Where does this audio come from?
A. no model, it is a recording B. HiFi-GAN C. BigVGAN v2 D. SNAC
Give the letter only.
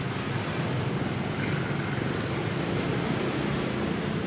A